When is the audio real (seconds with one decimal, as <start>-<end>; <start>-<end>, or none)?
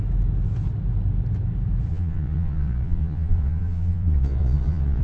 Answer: 0.0-1.9